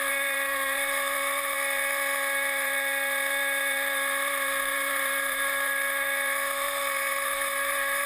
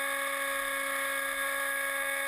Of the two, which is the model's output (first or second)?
first